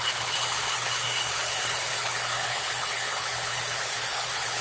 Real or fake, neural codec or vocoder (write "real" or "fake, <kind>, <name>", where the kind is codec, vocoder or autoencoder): fake, codec, HILCodec